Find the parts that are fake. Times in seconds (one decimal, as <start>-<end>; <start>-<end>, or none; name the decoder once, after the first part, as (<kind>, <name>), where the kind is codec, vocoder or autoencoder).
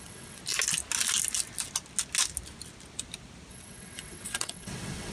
0.0-0.4 (vocoder, WaveNeXt); 3.5-5.1